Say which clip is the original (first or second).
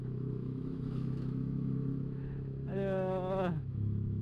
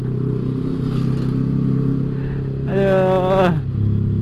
second